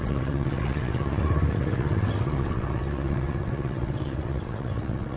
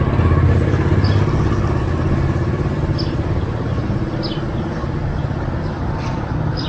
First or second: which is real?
second